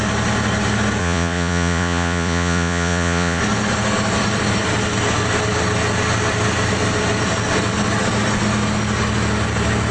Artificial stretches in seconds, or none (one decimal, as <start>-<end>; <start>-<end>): 1.0-3.4

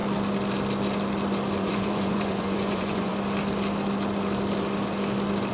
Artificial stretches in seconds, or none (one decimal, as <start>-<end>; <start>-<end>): 1.6-3.1